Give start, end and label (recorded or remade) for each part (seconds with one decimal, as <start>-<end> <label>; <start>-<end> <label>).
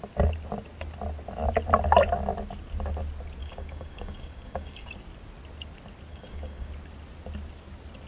0.0-3.4 recorded; 3.4-4.9 remade; 4.9-6.1 recorded; 6.1-6.7 remade; 6.7-8.1 recorded